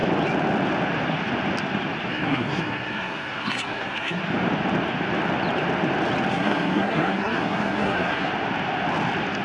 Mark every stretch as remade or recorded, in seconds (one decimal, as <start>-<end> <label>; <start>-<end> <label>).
0.0-2.1 recorded; 2.1-4.2 remade; 4.2-6.3 recorded; 6.3-8.3 remade; 8.3-9.4 recorded